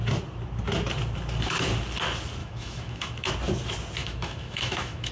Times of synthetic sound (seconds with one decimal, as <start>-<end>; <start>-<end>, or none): 2.4-3.3; 4.0-5.1